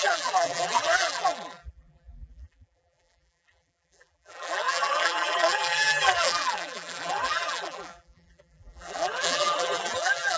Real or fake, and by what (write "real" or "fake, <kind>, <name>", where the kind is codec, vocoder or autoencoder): fake, vocoder, BigVGAN v2